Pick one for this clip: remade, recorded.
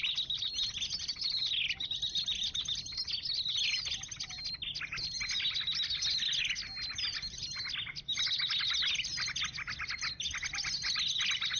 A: recorded